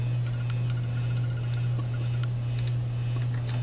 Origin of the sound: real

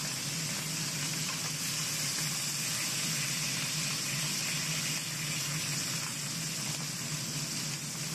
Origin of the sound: real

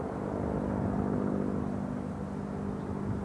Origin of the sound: real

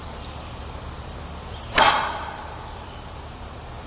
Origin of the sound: fake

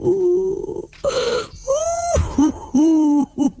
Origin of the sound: fake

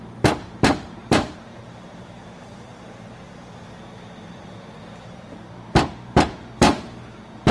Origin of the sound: fake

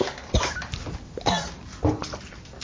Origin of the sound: real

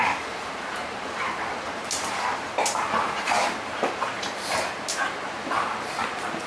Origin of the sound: fake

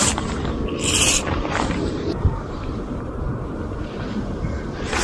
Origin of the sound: fake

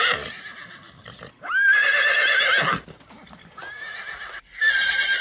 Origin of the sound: fake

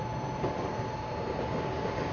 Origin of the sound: real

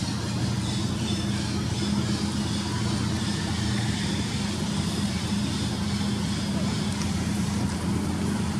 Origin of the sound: real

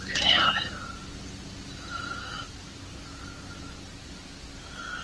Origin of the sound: real